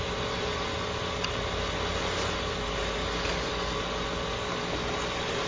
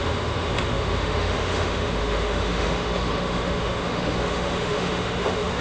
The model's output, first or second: second